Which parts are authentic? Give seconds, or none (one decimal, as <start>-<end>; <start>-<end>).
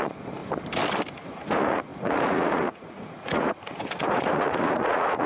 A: 0.4-1.1